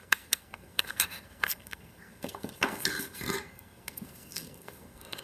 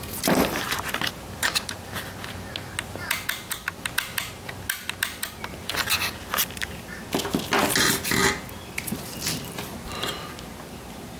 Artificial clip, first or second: first